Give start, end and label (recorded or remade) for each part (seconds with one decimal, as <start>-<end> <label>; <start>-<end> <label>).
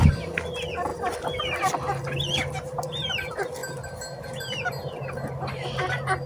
0.0-6.3 recorded